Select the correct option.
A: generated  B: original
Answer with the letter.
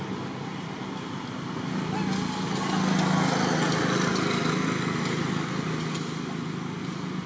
B